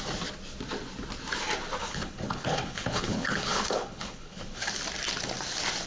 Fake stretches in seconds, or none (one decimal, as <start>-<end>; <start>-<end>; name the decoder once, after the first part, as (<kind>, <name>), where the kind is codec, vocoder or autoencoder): 1.8-4.7 (codec, HILCodec)